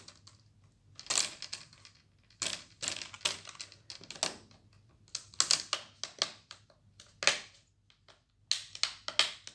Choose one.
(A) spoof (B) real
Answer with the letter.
B